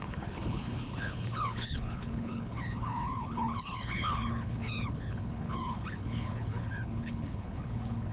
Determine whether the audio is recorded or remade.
remade